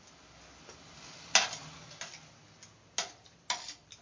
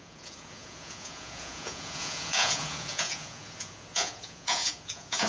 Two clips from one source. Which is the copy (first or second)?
second